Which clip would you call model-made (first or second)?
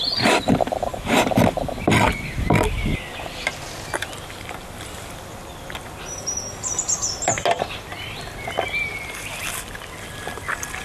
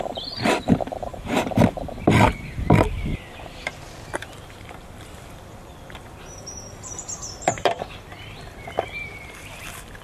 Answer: second